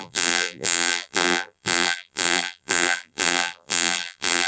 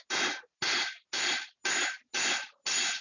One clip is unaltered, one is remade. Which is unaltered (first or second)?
second